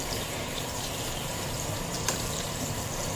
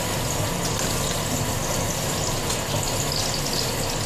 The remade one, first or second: first